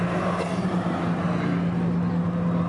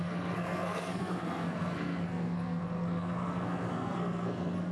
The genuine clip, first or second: first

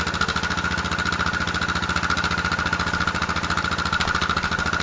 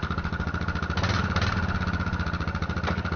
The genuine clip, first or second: first